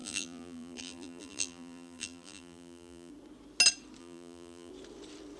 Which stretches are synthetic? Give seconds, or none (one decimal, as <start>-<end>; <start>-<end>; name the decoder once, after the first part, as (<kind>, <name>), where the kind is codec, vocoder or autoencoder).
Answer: 0.0-3.1 (vocoder, BigVGAN v2); 4.0-4.7